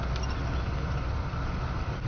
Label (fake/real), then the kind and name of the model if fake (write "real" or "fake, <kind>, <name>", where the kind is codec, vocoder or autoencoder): real